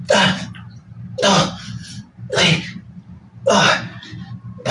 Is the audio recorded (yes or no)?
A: yes